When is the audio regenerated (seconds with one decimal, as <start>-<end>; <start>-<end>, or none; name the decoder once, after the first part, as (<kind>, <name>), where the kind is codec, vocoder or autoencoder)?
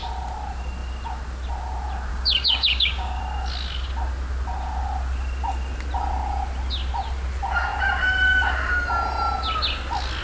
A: 2.1-3.2 (codec, DAC)